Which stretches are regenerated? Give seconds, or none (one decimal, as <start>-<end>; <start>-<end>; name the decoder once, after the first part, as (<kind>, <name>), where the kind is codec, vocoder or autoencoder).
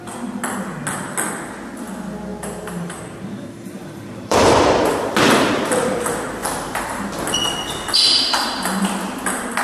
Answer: 2.3-5.0 (vocoder, BigVGAN v2); 6.4-7.3